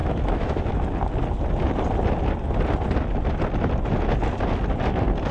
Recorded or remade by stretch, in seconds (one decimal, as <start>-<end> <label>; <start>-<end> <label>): 0.0-0.7 remade; 0.7-5.3 recorded